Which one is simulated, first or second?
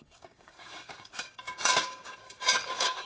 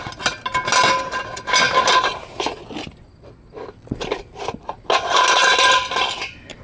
first